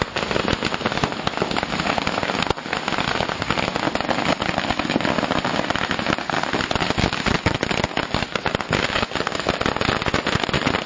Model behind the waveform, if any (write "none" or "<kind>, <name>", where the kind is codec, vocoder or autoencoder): none